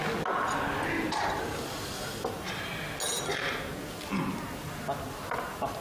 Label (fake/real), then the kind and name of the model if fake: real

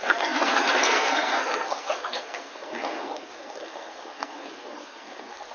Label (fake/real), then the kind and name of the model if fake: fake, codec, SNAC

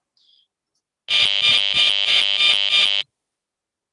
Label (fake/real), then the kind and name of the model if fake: real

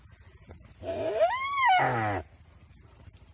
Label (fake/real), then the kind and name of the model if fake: real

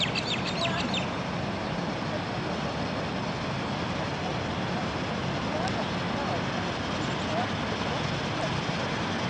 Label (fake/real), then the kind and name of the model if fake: real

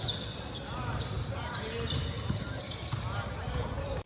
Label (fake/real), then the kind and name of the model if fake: real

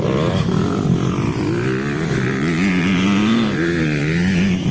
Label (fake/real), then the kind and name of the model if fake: real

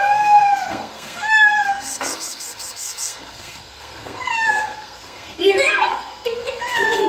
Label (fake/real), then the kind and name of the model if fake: fake, codec, SNAC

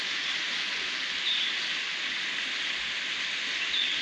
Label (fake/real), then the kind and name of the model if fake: real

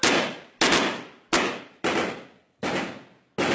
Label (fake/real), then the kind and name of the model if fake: real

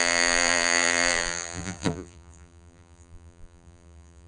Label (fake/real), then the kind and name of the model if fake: fake, vocoder, BigVGAN v2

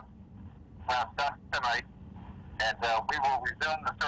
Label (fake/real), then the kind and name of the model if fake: real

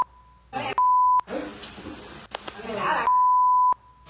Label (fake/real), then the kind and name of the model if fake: real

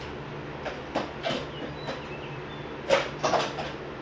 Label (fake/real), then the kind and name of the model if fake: real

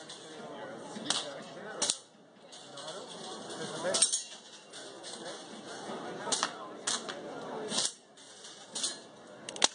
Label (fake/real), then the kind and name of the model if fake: real